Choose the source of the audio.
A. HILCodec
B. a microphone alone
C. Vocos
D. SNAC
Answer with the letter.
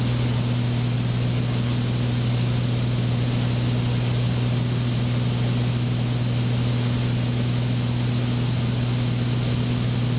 B